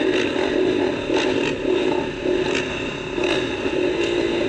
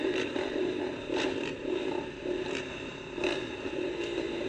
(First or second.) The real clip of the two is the first